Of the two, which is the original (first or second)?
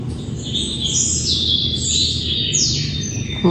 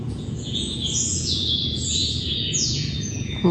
first